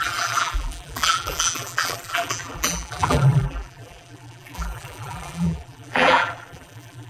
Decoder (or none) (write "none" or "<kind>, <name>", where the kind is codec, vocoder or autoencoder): vocoder, BigVGAN v2